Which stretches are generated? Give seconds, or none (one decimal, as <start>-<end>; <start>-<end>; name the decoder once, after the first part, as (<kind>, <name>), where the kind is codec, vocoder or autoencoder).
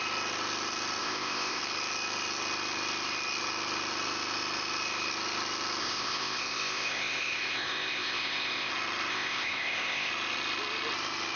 1.0-1.6 (codec, ZipCodec); 5.8-8.7; 9.1-10.1